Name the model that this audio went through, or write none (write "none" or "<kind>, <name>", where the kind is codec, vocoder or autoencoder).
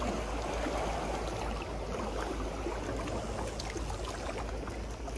none